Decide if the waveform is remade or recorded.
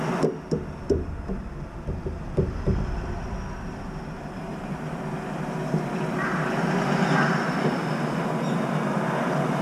recorded